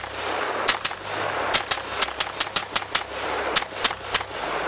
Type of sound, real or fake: real